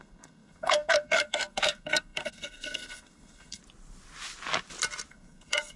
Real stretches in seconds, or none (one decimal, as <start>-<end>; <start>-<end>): 3.6-5.1